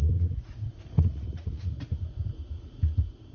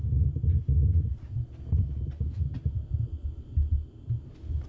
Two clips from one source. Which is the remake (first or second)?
first